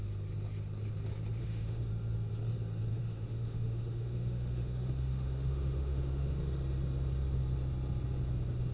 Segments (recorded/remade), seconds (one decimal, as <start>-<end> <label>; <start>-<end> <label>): 0.0-1.4 recorded; 1.4-1.9 remade; 1.9-2.9 recorded; 2.9-6.4 remade; 6.4-8.7 recorded